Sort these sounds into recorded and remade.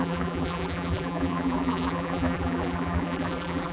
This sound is remade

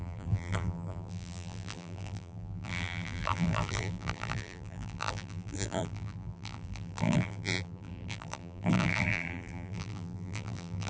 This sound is remade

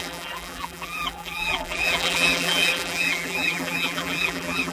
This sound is remade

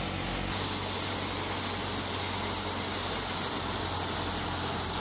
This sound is recorded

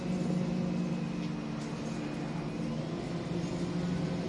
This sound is recorded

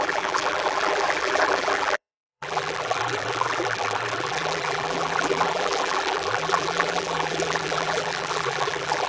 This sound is remade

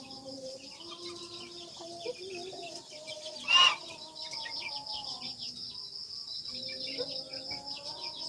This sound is recorded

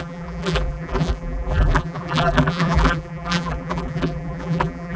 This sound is remade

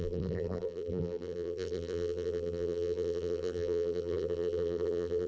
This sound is remade